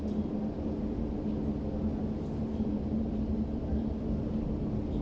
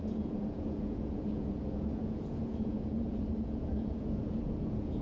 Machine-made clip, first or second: second